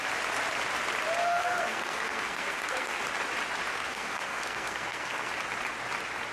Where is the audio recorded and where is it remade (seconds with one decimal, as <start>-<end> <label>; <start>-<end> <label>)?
0.0-1.2 recorded; 1.2-3.0 remade; 3.0-3.7 recorded; 3.7-5.3 remade; 5.3-6.3 recorded